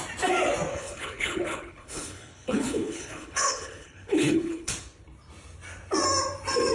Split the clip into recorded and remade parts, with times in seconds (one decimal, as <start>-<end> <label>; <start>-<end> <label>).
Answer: 0.0-0.7 recorded; 0.7-4.7 remade; 4.7-6.7 recorded